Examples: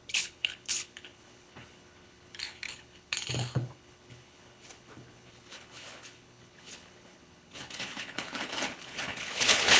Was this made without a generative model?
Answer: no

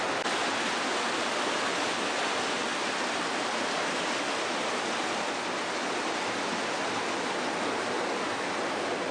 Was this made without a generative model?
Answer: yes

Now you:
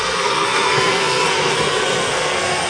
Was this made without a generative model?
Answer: no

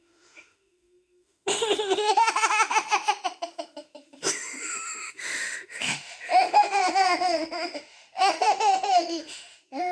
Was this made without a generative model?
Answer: no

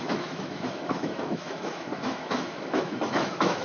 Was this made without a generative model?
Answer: no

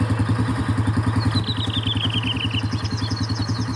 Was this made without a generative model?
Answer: yes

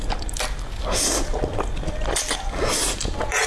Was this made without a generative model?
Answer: yes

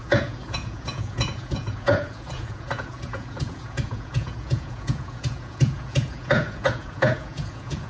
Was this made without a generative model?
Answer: no